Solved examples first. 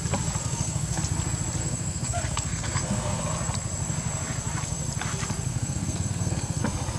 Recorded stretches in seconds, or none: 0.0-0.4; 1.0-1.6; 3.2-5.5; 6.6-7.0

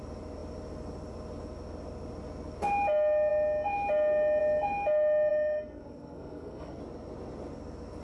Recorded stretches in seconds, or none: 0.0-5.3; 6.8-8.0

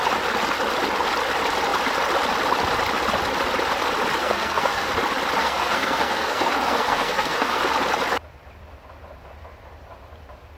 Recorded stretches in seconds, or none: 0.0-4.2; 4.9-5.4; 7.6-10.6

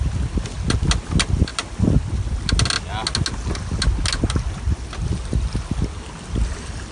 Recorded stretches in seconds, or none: 0.0-6.9